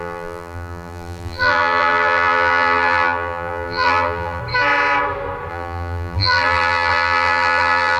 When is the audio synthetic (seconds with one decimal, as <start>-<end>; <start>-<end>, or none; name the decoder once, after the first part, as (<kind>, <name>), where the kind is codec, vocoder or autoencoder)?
0.0-4.4 (vocoder, BigVGAN v2); 5.5-8.0